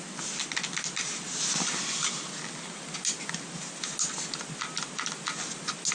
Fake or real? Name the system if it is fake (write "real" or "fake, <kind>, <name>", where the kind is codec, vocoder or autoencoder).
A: real